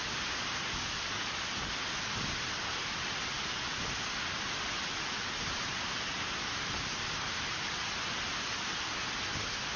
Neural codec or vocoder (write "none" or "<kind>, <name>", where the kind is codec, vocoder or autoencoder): none